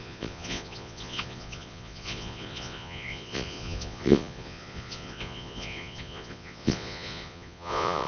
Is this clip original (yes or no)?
no